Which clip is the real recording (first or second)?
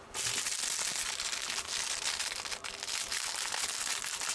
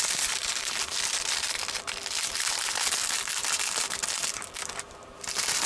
first